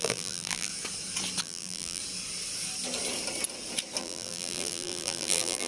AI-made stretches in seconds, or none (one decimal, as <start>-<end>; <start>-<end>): 0.0-0.7; 1.4-2.0; 4.0-5.7